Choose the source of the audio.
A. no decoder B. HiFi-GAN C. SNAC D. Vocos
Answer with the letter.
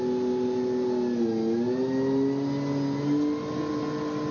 A